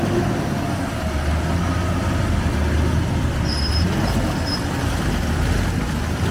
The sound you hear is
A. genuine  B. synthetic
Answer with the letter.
A